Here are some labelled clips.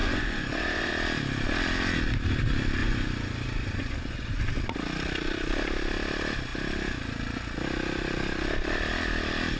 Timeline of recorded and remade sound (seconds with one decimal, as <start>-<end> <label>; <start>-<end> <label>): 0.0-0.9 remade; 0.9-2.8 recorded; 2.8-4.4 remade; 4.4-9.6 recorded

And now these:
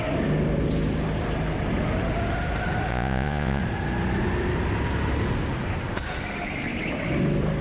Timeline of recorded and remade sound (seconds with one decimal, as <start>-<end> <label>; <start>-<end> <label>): 0.0-2.9 recorded; 2.9-3.6 remade; 3.6-7.6 recorded

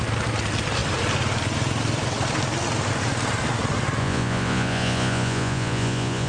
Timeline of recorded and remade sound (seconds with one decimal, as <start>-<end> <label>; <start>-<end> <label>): 0.0-4.0 recorded; 4.0-6.3 remade